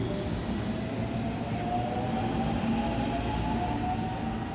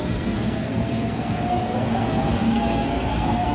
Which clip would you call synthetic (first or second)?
second